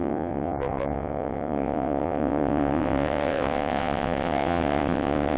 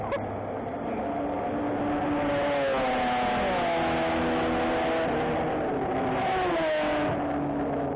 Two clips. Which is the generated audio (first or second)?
first